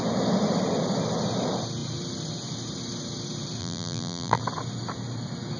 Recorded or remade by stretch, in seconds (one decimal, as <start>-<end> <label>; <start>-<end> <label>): 0.0-3.6 recorded; 3.6-4.4 remade; 4.4-5.6 recorded